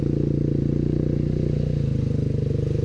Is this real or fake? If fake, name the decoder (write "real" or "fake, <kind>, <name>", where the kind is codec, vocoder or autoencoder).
real